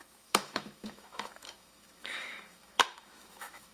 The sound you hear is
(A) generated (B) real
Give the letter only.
A